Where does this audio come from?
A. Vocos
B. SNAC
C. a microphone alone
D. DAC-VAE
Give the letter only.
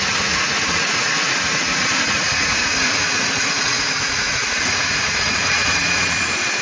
A